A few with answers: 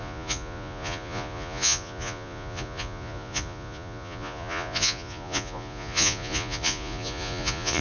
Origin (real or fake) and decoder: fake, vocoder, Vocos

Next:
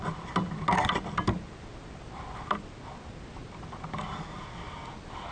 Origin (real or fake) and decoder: real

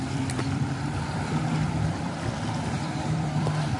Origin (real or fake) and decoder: fake, vocoder, BigVGAN v2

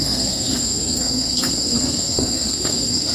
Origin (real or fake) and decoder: fake, codec, SNAC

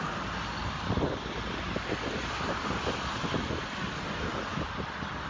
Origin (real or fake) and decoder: real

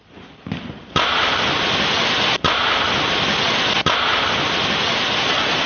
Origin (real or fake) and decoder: real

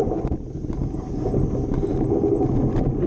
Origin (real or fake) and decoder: real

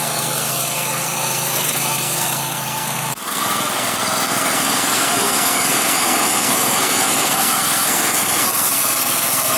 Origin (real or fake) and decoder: fake, codec, SNAC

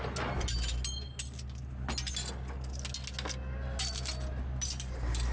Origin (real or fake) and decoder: real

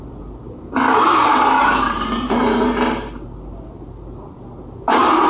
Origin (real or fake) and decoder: real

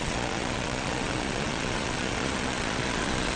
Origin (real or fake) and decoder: fake, vocoder, Vocos